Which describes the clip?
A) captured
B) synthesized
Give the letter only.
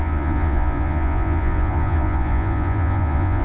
B